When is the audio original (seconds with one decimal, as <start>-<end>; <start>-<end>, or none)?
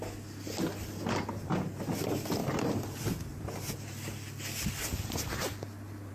0.0-6.1